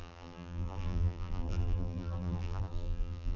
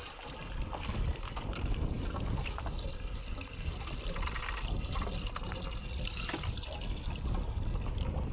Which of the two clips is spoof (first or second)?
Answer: first